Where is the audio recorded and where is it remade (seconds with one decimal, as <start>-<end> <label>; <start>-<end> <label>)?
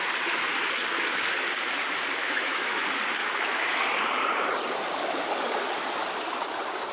0.0-2.2 recorded; 2.2-2.8 remade; 2.8-3.2 recorded; 3.2-3.7 remade; 3.7-6.9 recorded